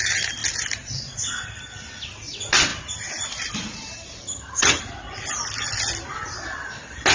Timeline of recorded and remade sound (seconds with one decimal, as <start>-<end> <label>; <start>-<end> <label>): 0.0-4.2 recorded; 4.2-4.8 remade; 4.8-7.1 recorded